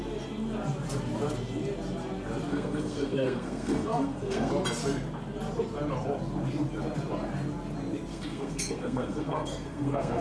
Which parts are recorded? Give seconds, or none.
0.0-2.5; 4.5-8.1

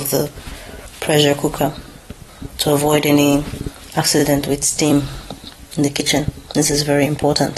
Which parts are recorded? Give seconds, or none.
0.0-4.2; 6.0-7.6

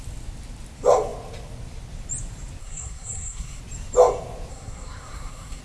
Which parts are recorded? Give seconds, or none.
0.0-2.6; 3.6-4.5

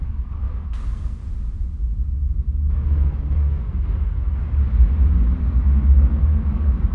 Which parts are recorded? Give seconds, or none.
1.2-2.7; 4.4-5.4

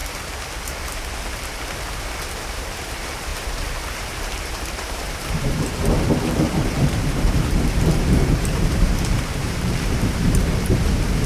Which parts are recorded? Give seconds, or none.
0.0-2.3